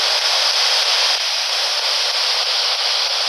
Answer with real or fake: real